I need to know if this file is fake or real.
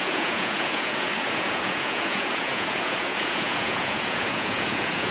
fake